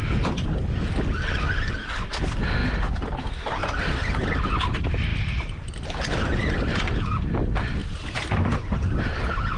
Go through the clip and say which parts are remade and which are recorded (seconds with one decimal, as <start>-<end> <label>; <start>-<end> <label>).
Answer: 0.0-2.6 recorded; 2.6-3.2 remade; 3.2-3.6 recorded; 3.6-4.3 remade; 4.3-5.1 recorded; 5.1-6.1 remade; 6.1-7.8 recorded; 7.8-9.0 remade; 9.0-9.6 recorded